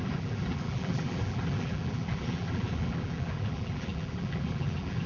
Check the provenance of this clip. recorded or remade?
remade